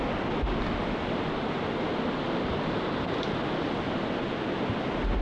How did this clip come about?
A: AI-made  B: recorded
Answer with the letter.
B